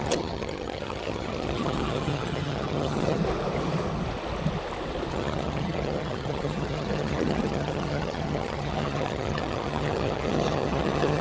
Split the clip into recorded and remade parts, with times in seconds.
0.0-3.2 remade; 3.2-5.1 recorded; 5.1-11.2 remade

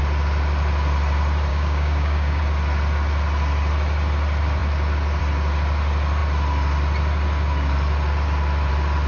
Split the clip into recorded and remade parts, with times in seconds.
0.0-1.5 recorded; 1.5-2.4 remade; 2.4-9.1 recorded